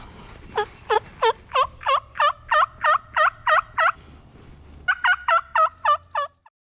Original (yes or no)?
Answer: yes